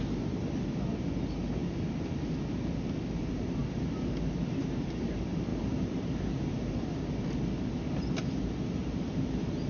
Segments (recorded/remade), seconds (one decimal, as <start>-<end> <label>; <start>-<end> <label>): 0.0-4.6 recorded; 4.6-5.1 remade; 5.1-5.5 recorded; 5.5-6.7 remade; 6.7-9.7 recorded